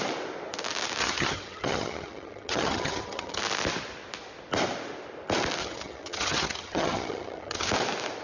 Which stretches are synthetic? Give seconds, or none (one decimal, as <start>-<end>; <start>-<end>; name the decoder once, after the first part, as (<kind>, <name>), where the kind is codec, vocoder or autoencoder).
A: 1.0-3.4 (vocoder, HiFi-GAN); 5.6-7.7